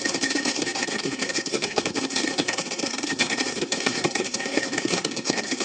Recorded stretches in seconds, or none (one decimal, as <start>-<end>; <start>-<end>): none